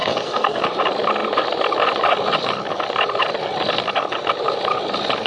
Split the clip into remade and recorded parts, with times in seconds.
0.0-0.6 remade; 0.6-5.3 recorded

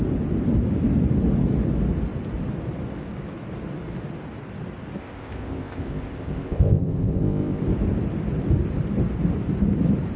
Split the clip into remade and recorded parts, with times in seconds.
0.0-5.0 recorded; 5.0-7.6 remade; 7.6-10.2 recorded

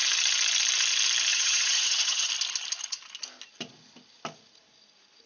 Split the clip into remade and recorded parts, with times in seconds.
0.0-1.3 recorded; 1.3-2.3 remade; 2.3-5.3 recorded

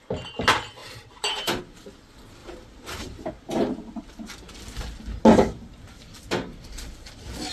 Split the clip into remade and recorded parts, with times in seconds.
0.0-0.8 recorded; 0.8-1.6 remade; 1.6-2.4 recorded; 2.4-3.3 remade; 3.3-7.5 recorded

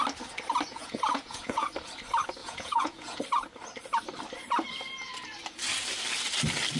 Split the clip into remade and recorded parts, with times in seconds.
0.0-0.7 recorded; 0.7-1.7 remade; 1.7-2.4 recorded; 2.4-3.2 remade; 3.2-6.8 recorded

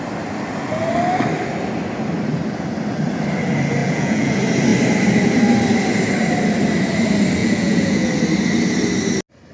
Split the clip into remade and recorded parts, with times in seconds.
0.0-3.8 recorded; 3.8-4.3 remade; 4.3-7.4 recorded; 7.4-8.1 remade; 8.1-9.5 recorded